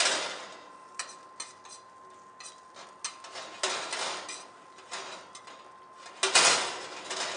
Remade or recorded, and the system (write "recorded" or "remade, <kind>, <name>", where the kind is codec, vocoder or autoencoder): recorded